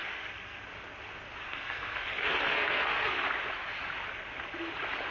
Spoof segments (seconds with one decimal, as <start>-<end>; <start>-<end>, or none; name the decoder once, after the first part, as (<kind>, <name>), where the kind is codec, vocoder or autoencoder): 0.0-0.6 (codec, SNAC); 1.4-3.2